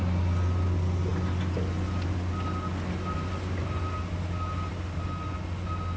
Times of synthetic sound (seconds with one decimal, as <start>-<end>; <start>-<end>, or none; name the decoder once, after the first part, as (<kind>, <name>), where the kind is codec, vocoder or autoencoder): none